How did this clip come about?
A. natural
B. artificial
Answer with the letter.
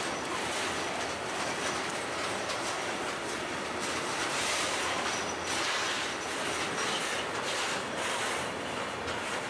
A